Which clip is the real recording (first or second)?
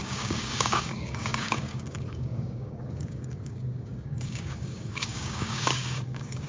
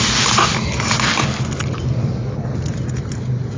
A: second